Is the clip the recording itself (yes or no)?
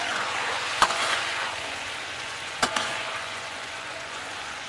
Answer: no